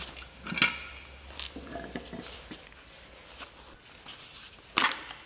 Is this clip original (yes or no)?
yes